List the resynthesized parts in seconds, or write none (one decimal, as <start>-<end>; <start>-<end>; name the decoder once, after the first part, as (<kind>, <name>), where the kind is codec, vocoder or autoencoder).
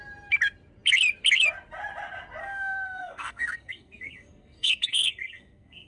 2.4-5.9 (codec, SNAC)